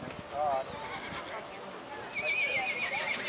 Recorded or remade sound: recorded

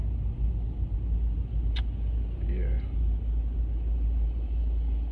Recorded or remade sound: recorded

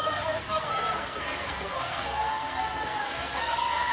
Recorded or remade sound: remade